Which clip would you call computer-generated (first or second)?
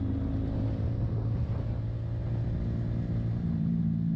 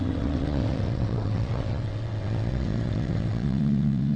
second